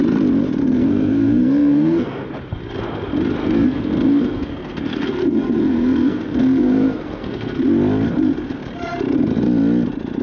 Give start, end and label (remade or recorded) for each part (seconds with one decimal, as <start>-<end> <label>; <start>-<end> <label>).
0.0-0.6 recorded; 0.6-2.3 remade; 2.3-3.4 recorded; 3.4-7.6 remade; 7.6-10.2 recorded